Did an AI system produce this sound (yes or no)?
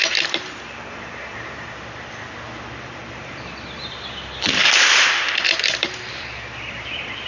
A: yes